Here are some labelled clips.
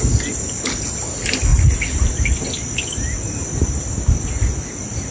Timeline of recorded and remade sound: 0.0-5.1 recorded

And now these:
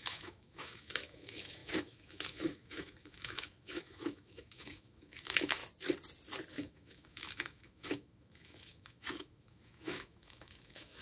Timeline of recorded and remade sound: 0.0-5.6 remade; 5.6-6.5 recorded; 6.5-11.0 remade

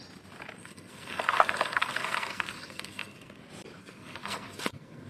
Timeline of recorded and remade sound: 0.0-0.6 recorded; 0.6-3.4 remade; 3.4-3.8 recorded; 3.8-5.1 remade

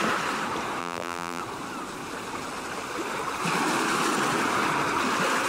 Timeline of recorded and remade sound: 0.0-0.8 recorded; 0.8-1.4 remade; 1.4-5.5 recorded

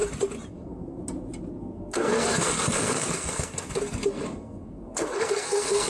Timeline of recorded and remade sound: 0.0-0.5 recorded; 0.5-1.0 remade; 1.0-1.6 recorded; 1.6-5.9 remade

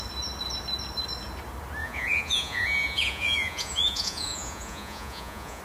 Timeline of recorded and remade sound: 0.0-1.8 recorded; 1.8-5.6 remade